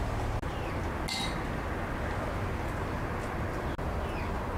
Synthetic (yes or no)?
no